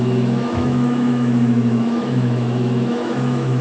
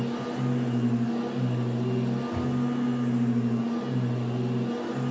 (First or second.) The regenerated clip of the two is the first